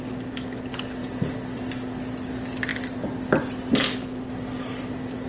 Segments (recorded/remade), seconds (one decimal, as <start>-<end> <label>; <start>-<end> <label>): 0.0-5.3 recorded